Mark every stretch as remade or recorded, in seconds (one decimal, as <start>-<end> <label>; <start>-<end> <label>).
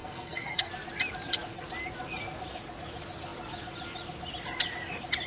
0.0-0.7 remade; 0.7-5.3 recorded